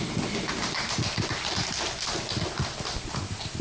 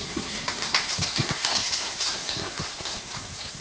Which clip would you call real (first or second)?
first